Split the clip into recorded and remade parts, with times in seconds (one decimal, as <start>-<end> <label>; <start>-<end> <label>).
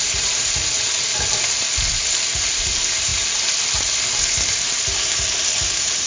0.0-6.1 recorded